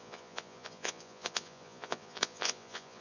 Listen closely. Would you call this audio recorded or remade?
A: remade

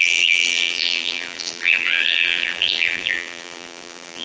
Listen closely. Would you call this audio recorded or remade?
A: remade